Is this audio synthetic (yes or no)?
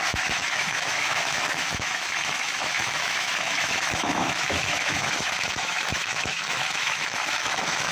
yes